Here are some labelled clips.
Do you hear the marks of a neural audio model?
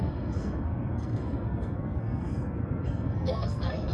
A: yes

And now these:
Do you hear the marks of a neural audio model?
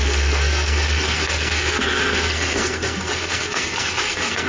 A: yes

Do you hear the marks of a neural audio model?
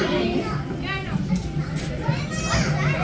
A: no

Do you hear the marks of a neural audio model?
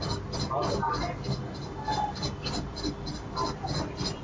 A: no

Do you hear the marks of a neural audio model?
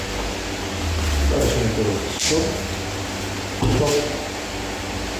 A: no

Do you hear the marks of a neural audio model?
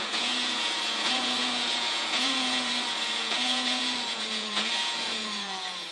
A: yes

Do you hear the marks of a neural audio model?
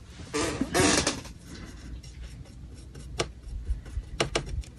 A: no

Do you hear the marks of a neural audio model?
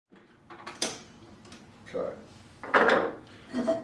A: no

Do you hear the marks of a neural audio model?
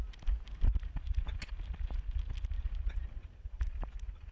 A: no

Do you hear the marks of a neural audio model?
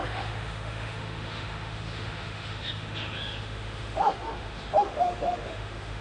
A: yes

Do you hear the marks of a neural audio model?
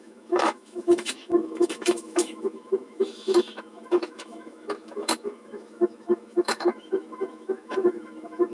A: yes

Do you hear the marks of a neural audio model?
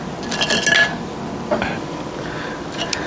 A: no